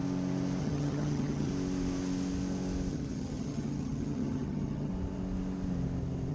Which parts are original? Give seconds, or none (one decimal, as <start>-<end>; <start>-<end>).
0.0-0.6; 1.5-2.9; 4.9-6.3